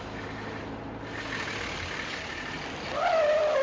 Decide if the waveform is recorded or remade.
recorded